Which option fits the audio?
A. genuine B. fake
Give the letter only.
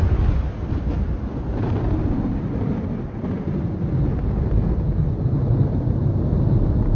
A